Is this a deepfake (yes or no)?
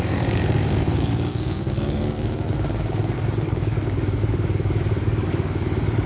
yes